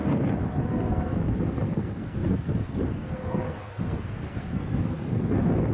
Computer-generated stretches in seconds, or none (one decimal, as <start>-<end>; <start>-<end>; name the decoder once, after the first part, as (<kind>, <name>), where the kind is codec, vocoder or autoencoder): 0.0-5.7 (codec, SNAC)